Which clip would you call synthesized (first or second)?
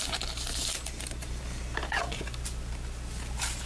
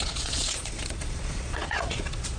second